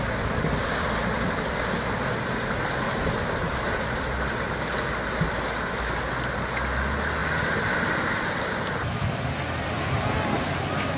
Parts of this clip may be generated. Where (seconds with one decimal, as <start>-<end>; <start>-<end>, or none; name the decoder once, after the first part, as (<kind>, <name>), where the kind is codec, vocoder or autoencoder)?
none